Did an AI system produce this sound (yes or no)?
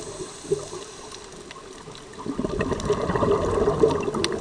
no